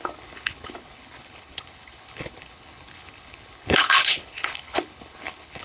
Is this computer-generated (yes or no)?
yes